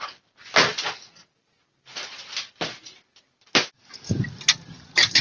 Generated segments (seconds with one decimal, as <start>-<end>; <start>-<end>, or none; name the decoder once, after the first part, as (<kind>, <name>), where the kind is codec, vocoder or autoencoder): none